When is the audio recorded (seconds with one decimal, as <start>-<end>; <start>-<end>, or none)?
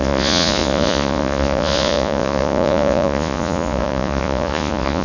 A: none